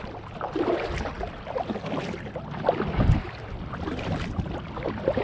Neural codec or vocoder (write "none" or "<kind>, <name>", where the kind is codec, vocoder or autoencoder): none